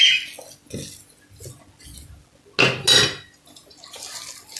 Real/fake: real